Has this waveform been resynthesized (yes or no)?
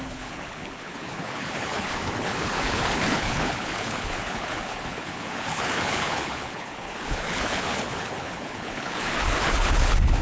yes